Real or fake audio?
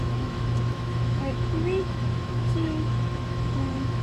fake